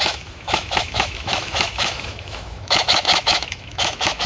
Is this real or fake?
fake